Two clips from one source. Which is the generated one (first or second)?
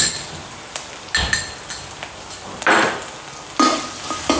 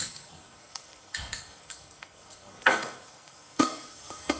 second